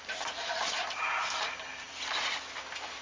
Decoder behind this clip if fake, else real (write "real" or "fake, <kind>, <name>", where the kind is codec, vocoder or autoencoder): real